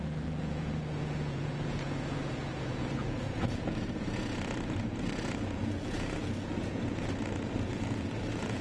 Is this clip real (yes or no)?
no